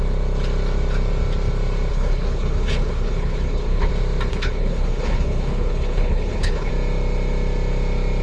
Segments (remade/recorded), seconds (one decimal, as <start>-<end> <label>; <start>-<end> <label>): 0.0-1.9 recorded; 1.9-3.9 remade; 3.9-4.3 recorded; 4.3-6.7 remade; 6.7-8.2 recorded

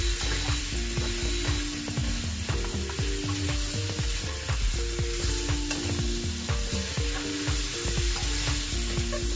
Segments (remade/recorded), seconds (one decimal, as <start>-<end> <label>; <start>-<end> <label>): 0.0-9.4 recorded

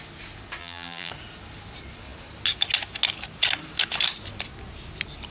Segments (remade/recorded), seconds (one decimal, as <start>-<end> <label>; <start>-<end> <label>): 0.0-0.6 recorded; 0.6-1.1 remade; 1.1-5.3 recorded

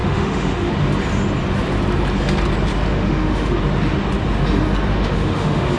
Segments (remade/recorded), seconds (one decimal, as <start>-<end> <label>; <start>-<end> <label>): 0.0-0.7 remade; 0.7-2.9 recorded; 2.9-3.6 remade; 3.6-4.9 recorded; 4.9-5.8 remade